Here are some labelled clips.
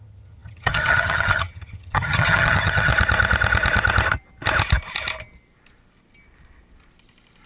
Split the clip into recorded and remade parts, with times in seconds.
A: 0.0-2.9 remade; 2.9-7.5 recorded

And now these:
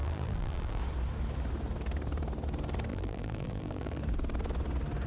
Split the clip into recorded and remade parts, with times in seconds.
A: 0.0-0.8 remade; 0.8-2.9 recorded; 2.9-4.0 remade; 4.0-5.1 recorded

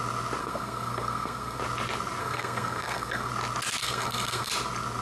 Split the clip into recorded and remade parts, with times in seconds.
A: 0.0-0.4 recorded; 0.4-1.6 remade; 1.6-2.2 recorded; 2.2-3.3 remade; 3.3-3.8 recorded; 3.8-4.5 remade; 4.5-5.0 recorded

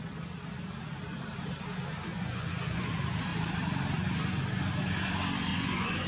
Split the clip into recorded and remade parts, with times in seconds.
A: 0.0-2.1 recorded; 2.1-2.9 remade; 2.9-5.5 recorded; 5.5-6.1 remade

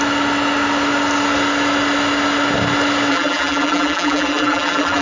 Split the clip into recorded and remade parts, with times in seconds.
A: 0.0-3.1 recorded; 3.1-5.0 remade